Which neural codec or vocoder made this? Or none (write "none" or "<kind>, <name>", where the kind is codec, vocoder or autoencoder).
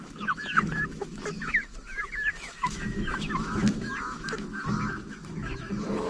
autoencoder, DAC-VAE